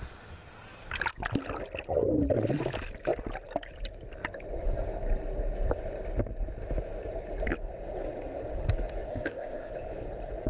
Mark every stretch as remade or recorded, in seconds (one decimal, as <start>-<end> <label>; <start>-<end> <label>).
0.0-9.1 recorded; 9.1-9.7 remade; 9.7-10.5 recorded